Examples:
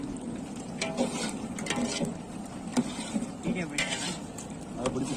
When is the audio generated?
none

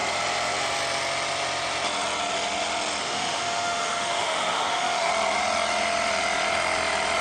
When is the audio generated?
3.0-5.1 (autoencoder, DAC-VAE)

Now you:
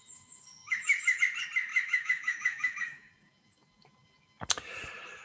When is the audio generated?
0.6-1.2 (autoencoder, DAC-VAE); 1.7-3.1